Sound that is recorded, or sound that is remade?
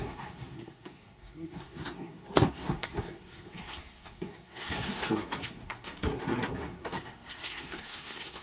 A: remade